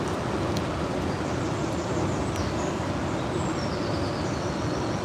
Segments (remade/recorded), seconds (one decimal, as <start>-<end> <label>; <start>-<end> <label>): 0.0-2.4 recorded; 2.4-2.9 remade; 2.9-5.0 recorded